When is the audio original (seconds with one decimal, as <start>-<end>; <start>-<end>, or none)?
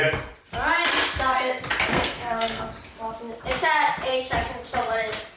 0.0-1.9; 2.6-5.4